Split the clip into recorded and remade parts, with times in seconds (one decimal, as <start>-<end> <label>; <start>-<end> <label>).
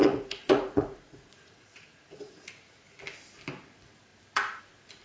0.0-3.0 remade; 3.0-5.0 recorded